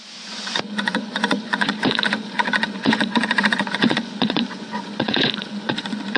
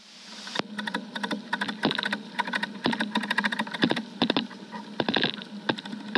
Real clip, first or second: second